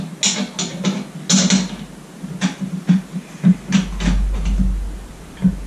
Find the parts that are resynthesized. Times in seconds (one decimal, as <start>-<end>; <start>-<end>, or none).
none